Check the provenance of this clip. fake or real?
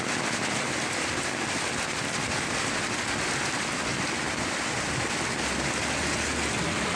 real